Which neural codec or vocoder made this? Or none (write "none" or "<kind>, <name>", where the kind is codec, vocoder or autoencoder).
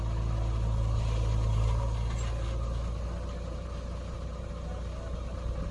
none